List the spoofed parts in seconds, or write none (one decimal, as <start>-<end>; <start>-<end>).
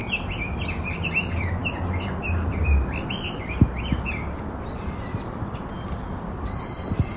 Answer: 0.7-7.2